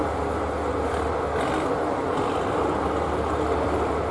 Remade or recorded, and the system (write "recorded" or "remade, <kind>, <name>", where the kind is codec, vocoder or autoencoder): recorded